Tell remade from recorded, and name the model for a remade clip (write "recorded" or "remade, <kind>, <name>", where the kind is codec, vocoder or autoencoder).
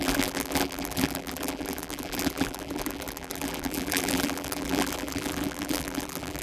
remade, vocoder, BigVGAN v2